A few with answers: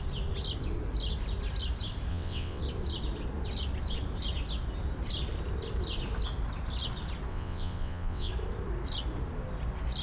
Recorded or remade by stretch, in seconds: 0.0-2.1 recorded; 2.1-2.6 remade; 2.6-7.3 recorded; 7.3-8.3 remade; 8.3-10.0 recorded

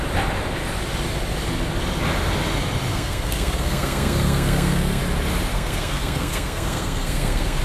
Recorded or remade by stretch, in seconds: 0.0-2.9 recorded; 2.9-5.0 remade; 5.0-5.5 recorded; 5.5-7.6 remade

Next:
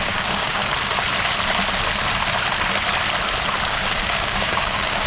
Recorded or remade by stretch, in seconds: 0.0-0.6 remade; 0.6-3.7 recorded; 3.7-5.1 remade